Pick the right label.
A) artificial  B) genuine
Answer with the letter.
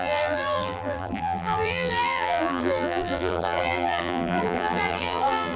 A